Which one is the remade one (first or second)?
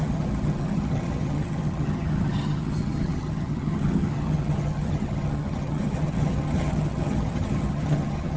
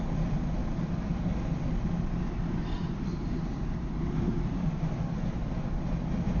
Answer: first